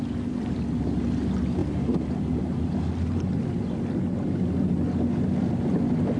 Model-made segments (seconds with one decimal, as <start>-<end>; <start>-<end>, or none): none